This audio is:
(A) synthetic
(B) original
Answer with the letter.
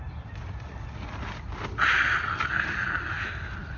B